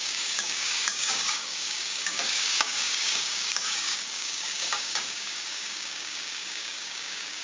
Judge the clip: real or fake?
fake